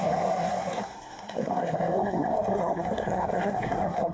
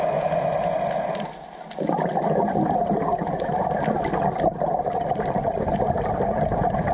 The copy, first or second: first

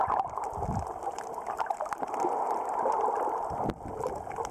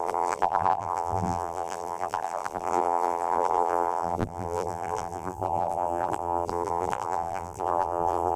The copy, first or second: second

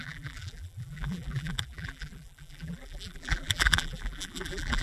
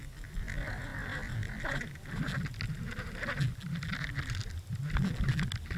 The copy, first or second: first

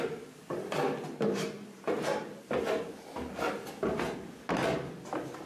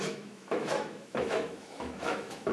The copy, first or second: second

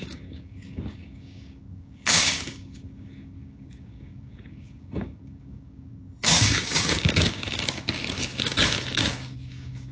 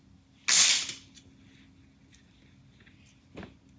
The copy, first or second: first